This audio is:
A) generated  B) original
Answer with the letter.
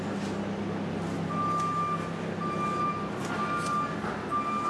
B